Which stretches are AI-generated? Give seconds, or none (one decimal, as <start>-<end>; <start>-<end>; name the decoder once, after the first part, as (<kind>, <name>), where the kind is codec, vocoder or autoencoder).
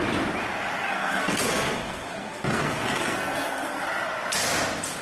0.8-3.8 (codec, SNAC)